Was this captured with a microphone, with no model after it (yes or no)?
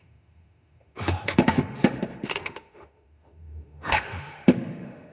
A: no